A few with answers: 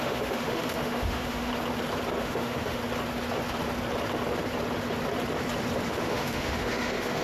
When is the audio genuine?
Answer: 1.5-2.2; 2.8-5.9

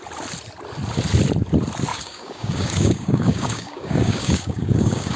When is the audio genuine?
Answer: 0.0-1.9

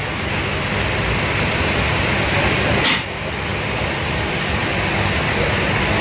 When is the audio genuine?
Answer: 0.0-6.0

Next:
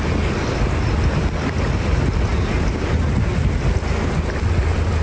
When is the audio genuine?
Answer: 0.0-5.0

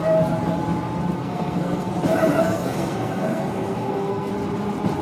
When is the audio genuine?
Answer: 0.0-1.2; 1.9-2.3; 4.3-5.0

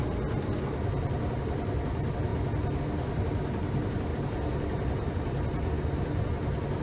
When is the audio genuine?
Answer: 0.0-6.8